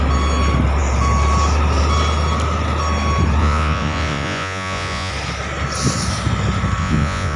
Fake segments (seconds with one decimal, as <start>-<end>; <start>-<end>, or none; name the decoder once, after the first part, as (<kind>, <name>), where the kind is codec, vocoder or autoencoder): 3.4-5.1 (vocoder, Vocos); 6.8-7.4